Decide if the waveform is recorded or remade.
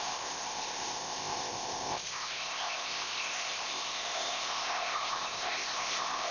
remade